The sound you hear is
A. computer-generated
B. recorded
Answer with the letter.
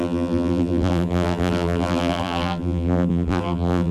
A